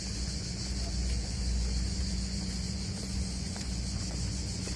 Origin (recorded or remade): remade